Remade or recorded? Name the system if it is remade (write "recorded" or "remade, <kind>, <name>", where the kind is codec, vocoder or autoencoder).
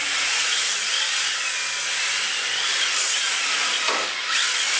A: recorded